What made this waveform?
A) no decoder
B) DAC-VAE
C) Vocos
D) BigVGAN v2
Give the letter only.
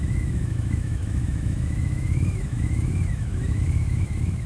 B